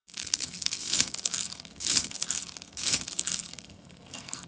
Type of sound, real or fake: fake